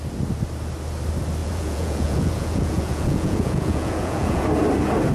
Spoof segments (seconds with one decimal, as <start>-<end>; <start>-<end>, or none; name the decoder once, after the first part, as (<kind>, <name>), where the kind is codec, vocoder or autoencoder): 1.4-4.5 (vocoder, Vocos)